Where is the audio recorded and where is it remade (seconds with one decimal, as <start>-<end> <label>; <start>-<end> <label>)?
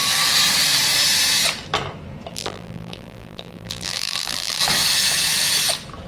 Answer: 0.0-2.3 recorded; 2.3-4.6 remade; 4.6-6.1 recorded